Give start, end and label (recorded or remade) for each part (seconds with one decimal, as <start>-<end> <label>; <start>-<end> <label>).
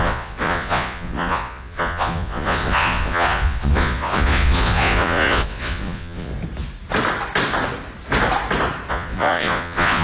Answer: 0.0-6.3 remade; 6.3-8.9 recorded; 8.9-10.0 remade